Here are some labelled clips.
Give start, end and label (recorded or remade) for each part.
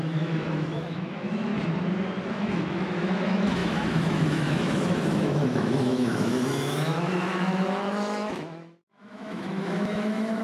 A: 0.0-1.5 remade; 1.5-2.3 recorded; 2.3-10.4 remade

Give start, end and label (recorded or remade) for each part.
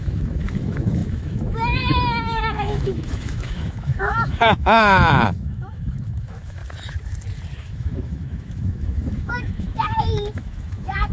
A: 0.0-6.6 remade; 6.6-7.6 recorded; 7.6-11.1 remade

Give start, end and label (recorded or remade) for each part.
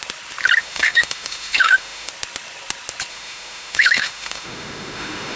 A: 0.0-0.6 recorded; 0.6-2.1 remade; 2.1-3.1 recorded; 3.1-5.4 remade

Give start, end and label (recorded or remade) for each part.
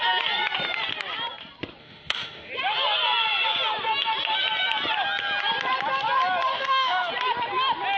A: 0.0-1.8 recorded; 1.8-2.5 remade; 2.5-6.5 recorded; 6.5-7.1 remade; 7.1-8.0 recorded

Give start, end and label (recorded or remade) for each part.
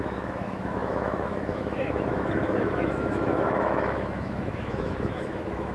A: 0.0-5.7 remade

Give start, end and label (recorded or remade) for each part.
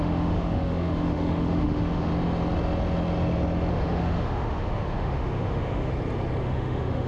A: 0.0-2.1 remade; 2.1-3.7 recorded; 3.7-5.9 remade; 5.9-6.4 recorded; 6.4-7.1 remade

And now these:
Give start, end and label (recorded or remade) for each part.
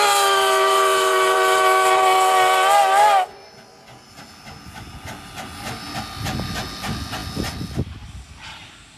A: 0.0-9.0 recorded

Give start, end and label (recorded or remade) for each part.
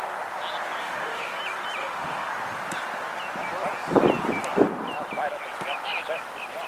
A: 0.0-0.8 recorded; 0.8-1.4 remade; 1.4-1.8 recorded; 1.8-2.3 remade; 2.3-6.7 recorded